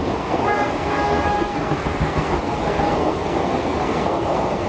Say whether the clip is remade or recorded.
remade